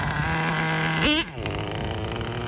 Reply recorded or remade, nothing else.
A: recorded